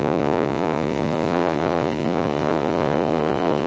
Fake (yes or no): yes